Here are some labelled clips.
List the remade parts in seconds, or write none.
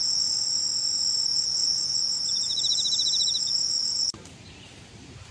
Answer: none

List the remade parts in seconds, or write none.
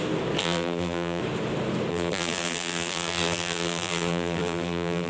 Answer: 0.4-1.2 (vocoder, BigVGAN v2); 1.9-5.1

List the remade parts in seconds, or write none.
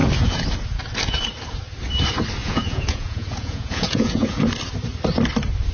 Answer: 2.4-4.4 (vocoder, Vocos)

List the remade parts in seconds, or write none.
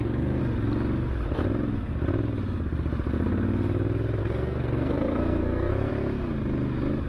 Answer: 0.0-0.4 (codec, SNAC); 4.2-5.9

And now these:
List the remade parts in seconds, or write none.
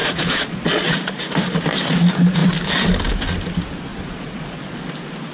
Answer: 0.0-1.1 (vocoder, Vocos); 3.9-4.8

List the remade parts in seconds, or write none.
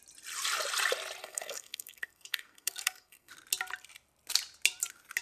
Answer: 1.2-3.3 (codec, SNAC)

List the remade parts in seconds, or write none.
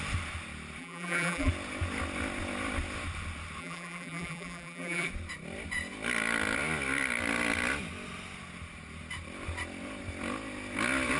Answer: 0.8-1.5 (vocoder, BigVGAN v2); 3.6-5.1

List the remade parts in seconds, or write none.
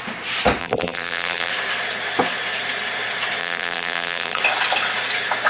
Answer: 0.6-1.5 (vocoder, BigVGAN v2); 3.4-4.4